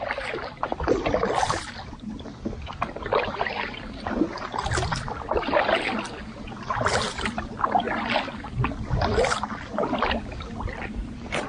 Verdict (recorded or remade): recorded